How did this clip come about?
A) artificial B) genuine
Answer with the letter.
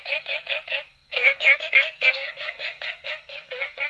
A